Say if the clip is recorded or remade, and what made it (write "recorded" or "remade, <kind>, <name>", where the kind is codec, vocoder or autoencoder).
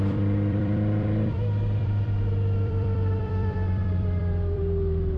remade, vocoder, BigVGAN v2